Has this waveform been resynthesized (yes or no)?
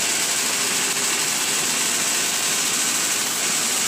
no